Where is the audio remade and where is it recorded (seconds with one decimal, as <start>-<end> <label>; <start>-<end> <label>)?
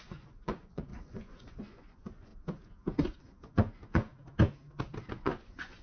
0.0-2.3 remade; 2.3-3.2 recorded; 3.2-4.1 remade; 4.1-5.1 recorded; 5.1-5.8 remade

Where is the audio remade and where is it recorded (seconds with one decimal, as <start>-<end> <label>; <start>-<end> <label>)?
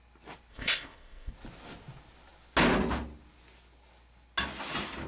0.0-0.5 recorded; 0.5-1.3 remade; 1.3-5.1 recorded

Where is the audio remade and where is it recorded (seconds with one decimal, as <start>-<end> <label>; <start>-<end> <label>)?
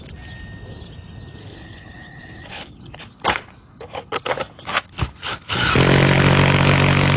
0.0-1.4 recorded; 1.4-5.7 remade; 5.7-7.2 recorded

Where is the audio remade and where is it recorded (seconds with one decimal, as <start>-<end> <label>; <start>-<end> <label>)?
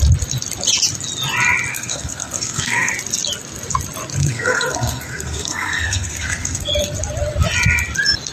0.0-1.7 recorded; 1.7-2.9 remade; 2.9-4.1 recorded; 4.1-6.7 remade; 6.7-8.3 recorded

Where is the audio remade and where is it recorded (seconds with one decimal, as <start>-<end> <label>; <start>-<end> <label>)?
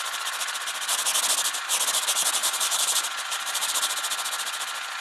0.0-2.4 recorded; 2.4-3.7 remade; 3.7-5.0 recorded